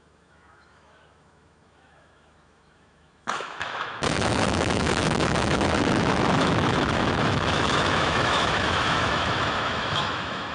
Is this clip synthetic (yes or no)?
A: yes